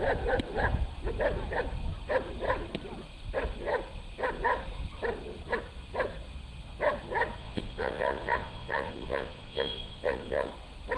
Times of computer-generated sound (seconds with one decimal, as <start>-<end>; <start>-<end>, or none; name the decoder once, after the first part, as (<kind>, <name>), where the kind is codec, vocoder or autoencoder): 7.4-10.5 (vocoder, Vocos)